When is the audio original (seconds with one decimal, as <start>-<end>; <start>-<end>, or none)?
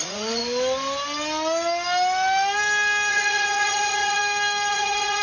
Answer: 0.4-3.1; 4.2-4.7